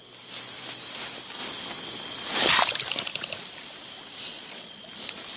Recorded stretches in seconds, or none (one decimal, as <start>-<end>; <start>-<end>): 0.0-4.3; 4.9-5.4